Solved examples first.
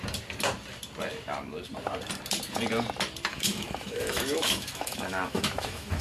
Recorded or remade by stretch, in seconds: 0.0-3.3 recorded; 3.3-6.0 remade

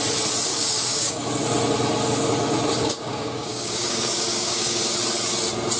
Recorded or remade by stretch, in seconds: 0.0-0.5 recorded; 0.5-1.3 remade; 1.3-2.8 recorded; 2.8-4.8 remade; 4.8-5.8 recorded